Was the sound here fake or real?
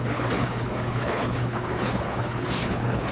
fake